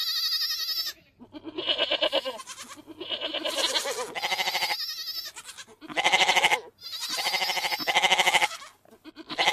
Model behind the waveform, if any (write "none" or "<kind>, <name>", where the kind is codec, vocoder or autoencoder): none